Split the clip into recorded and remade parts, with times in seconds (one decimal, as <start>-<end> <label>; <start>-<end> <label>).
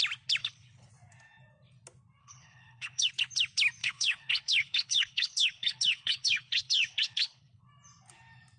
0.0-0.4 recorded; 0.4-0.9 remade; 0.9-2.2 recorded; 2.2-3.1 remade; 3.1-3.8 recorded; 3.8-7.6 remade; 7.6-8.6 recorded